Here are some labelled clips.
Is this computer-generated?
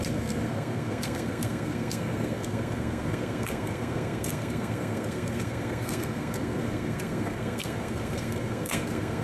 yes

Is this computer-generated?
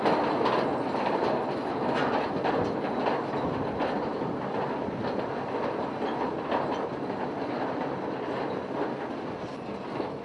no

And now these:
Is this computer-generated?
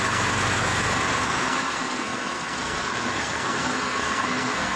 yes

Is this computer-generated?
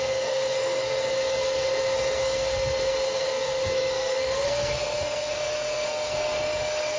yes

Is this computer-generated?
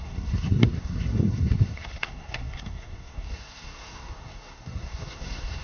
yes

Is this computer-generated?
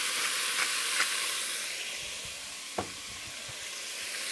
no